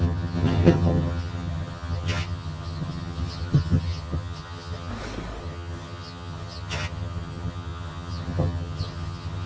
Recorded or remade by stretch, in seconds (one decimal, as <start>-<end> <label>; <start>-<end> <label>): 0.0-4.9 remade; 4.9-5.4 recorded; 5.4-9.5 remade